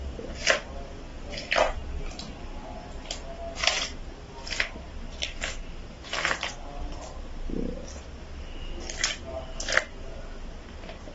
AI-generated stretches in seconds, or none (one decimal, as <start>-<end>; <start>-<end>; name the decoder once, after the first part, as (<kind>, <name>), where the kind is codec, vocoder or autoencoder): none

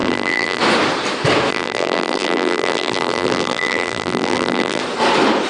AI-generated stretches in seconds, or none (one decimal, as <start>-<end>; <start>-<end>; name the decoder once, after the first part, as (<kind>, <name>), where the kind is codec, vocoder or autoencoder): 0.0-0.6 (vocoder, BigVGAN v2); 1.5-4.8

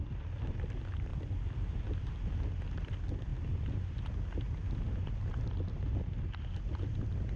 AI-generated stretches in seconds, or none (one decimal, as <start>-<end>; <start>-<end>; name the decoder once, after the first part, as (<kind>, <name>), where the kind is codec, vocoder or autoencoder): none

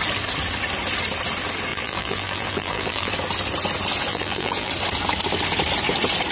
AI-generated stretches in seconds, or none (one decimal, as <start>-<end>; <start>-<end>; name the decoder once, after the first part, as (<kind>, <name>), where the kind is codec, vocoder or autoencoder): 1.7-3.1 (vocoder, BigVGAN v2); 4.1-4.7

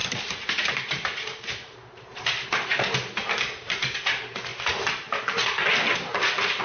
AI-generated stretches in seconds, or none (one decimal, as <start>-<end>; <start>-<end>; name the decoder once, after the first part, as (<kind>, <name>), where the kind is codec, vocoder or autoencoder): 0.7-2.7 (vocoder, BigVGAN v2); 4.0-4.5

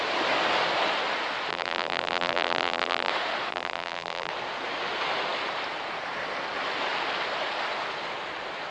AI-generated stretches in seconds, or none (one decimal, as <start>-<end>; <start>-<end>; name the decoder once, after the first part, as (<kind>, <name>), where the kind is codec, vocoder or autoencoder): 1.5-3.1 (vocoder, BigVGAN v2); 3.5-4.3

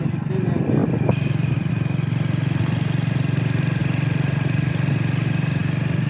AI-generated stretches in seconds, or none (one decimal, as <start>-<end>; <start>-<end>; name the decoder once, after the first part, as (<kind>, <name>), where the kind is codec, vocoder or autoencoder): 0.8-1.7 (vocoder, BigVGAN v2); 3.8-4.7

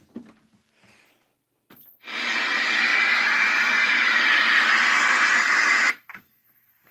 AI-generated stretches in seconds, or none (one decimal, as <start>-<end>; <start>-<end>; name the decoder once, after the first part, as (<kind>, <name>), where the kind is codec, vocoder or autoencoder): none